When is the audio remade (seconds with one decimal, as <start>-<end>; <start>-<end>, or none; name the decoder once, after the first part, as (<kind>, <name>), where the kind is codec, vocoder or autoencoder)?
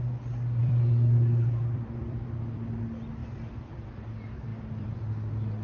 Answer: 0.6-2.8 (vocoder, BigVGAN v2); 3.2-4.0; 4.5-5.0